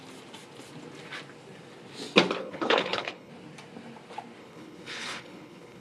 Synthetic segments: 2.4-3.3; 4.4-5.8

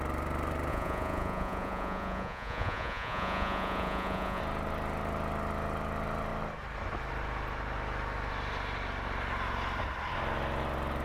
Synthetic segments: 0.7-4.4

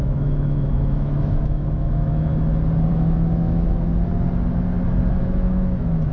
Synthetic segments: 0.0-2.3; 2.9-3.9; 5.1-6.1

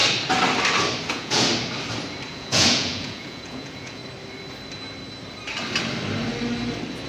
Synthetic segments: 1.1-1.5; 2.3-4.0

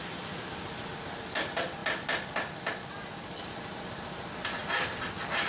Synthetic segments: none

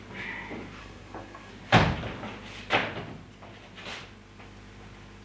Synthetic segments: 0.8-1.5

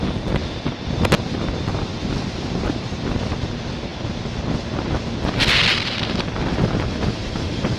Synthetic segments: none